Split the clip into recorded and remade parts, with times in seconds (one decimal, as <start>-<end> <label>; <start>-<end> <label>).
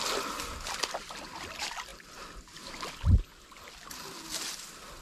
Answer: 0.0-5.0 recorded